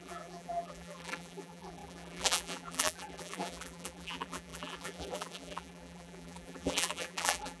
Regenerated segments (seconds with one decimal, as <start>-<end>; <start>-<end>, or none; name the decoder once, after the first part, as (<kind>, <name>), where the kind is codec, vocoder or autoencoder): 0.0-7.6 (vocoder, BigVGAN v2)